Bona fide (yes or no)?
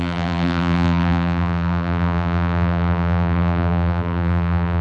no